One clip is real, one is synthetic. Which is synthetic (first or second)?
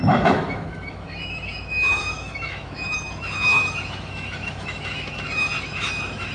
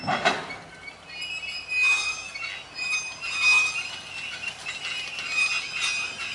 first